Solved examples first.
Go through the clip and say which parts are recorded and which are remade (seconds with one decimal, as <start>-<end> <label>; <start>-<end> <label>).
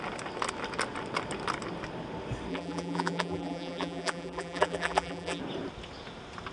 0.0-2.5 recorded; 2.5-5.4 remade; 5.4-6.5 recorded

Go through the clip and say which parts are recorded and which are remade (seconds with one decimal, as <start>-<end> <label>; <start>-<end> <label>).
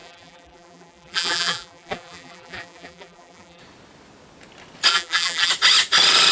0.0-3.6 remade; 3.6-4.9 recorded; 4.9-5.5 remade; 5.5-6.3 recorded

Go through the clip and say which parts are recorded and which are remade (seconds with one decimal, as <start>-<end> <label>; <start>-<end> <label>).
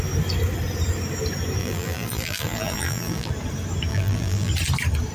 0.0-1.6 recorded; 1.6-3.3 remade; 3.3-3.9 recorded; 3.9-4.5 remade; 4.5-5.1 recorded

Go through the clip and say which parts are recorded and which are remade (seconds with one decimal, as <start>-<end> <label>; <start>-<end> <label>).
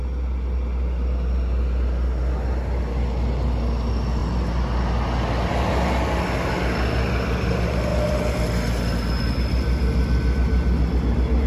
0.0-7.9 recorded; 7.9-8.4 remade; 8.4-11.5 recorded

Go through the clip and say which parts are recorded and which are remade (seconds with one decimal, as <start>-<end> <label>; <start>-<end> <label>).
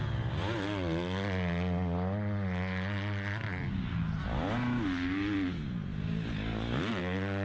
0.0-7.4 recorded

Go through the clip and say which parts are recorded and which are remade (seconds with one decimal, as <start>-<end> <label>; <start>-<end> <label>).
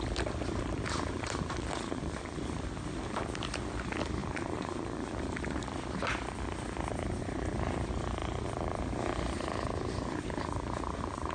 0.0-11.3 remade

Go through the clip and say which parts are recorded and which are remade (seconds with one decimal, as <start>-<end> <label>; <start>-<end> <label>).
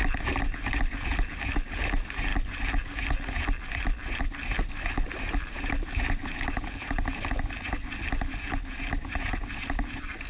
0.0-10.3 recorded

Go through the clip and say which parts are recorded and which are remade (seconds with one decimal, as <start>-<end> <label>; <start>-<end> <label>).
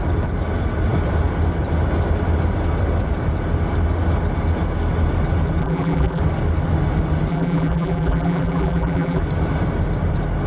0.0-5.6 recorded; 5.6-6.2 remade; 6.2-7.3 recorded; 7.3-9.2 remade; 9.2-10.5 recorded